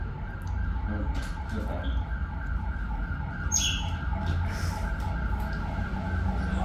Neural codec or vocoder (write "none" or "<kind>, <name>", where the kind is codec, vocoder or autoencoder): none